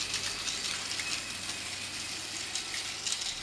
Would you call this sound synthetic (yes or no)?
no